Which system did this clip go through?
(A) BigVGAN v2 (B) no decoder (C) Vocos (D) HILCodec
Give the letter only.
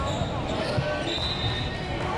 B